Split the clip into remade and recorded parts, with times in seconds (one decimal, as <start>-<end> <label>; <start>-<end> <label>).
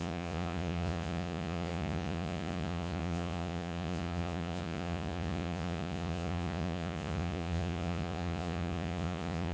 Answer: 0.0-9.5 remade